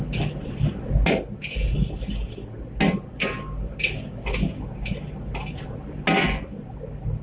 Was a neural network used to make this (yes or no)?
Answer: no